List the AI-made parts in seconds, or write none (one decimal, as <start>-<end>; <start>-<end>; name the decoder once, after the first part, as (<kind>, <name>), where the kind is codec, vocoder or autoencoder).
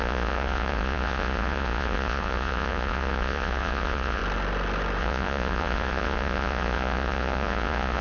0.0-4.2 (vocoder, Vocos); 5.0-8.0